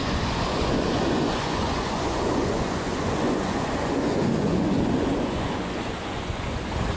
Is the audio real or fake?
fake